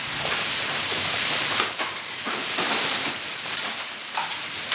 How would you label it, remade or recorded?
remade